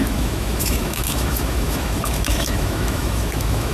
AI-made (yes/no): yes